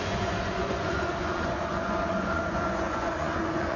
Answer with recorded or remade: remade